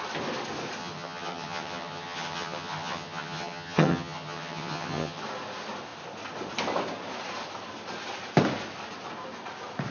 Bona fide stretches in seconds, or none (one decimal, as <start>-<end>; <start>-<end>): 0.0-0.8; 5.2-9.9

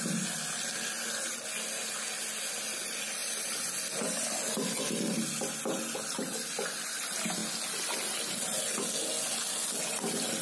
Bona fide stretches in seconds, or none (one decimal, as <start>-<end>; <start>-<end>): 0.0-10.4

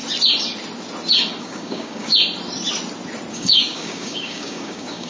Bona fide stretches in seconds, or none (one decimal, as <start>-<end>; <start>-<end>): 0.0-1.4; 2.1-3.3

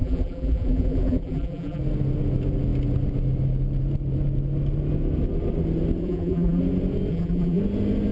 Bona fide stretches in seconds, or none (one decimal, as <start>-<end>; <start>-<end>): 1.8-6.0; 6.6-7.1; 7.6-8.1

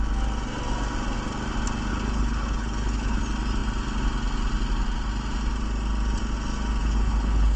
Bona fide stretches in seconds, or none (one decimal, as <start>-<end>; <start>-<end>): 0.0-1.9; 3.2-6.8

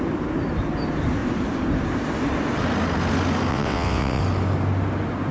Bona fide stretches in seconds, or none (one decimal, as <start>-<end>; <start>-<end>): 0.0-3.5; 4.2-5.3

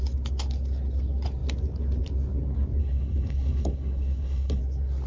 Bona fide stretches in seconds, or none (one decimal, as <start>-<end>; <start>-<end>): 0.0-2.8; 4.6-5.1

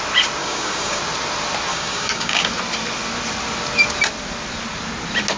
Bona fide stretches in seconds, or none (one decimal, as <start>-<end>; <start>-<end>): 0.0-0.4; 1.0-1.7; 2.5-5.4